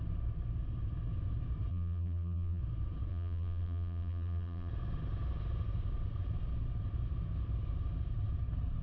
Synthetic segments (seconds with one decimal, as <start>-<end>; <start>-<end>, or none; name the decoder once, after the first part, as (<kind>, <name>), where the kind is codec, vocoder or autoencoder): 1.7-2.6 (vocoder, BigVGAN v2); 3.1-4.7